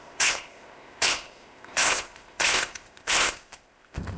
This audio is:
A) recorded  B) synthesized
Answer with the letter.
B